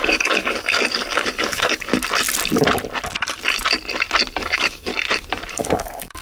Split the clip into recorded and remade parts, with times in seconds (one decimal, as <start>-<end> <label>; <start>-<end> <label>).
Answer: 0.0-1.9 remade; 1.9-4.4 recorded; 4.4-4.9 remade; 4.9-5.5 recorded; 5.5-6.2 remade